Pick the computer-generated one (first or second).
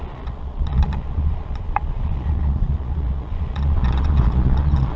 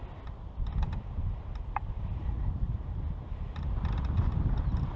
first